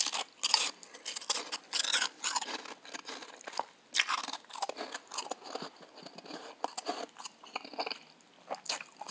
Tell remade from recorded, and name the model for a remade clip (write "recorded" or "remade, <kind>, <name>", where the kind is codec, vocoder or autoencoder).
recorded